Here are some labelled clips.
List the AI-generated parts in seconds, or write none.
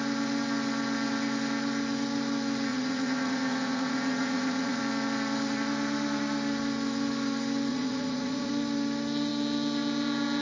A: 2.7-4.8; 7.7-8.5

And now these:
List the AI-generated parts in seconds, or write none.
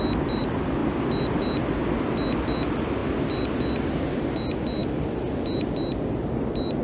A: none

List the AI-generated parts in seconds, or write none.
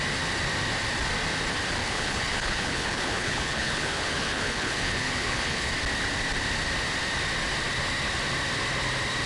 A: 1.8-5.7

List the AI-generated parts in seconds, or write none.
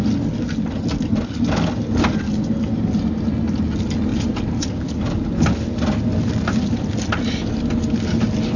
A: none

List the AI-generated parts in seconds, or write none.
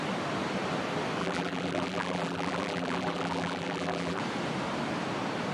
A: 1.2-4.2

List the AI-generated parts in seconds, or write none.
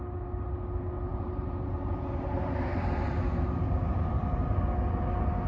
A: 1.1-4.2